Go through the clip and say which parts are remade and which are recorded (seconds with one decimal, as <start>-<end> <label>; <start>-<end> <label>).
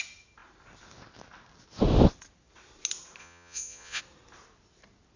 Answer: 0.0-3.2 recorded; 3.2-4.0 remade; 4.0-5.2 recorded